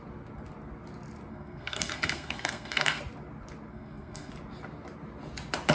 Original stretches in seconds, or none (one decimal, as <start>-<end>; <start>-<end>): 0.0-1.3; 3.0-3.7; 4.3-5.7

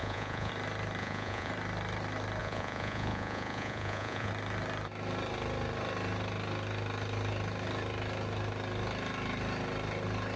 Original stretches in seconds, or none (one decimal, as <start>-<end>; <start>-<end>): 0.5-1.0; 1.5-2.4; 4.3-10.4